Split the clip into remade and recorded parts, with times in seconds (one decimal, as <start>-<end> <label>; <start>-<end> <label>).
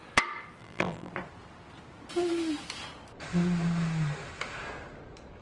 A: 0.0-0.6 recorded; 0.6-1.1 remade; 1.1-5.4 recorded